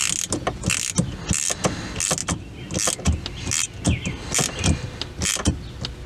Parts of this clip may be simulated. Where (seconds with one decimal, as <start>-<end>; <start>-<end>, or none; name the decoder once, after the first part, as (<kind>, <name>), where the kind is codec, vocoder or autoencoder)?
none